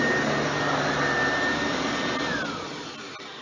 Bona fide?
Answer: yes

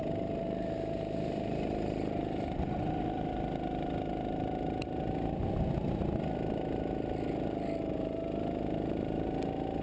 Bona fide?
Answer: yes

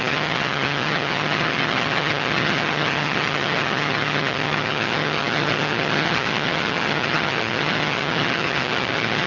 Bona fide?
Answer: no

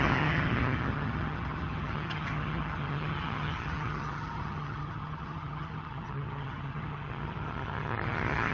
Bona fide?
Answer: no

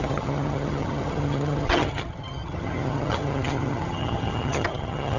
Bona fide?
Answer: no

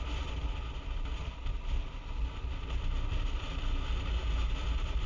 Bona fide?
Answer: yes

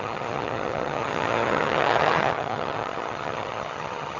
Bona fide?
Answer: no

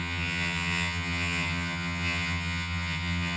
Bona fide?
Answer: no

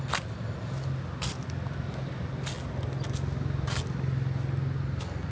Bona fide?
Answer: yes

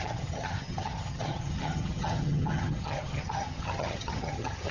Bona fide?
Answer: no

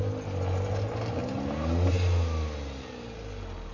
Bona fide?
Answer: yes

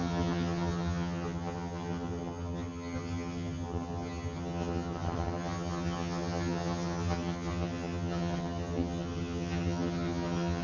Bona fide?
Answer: no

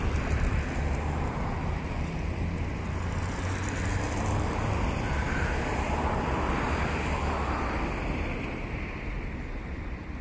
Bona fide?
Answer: yes